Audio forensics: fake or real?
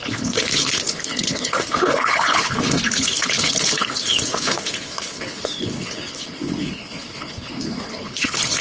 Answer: fake